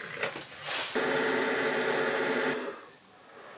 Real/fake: real